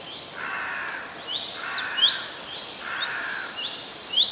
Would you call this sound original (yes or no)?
yes